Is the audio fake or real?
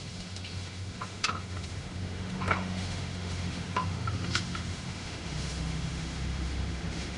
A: fake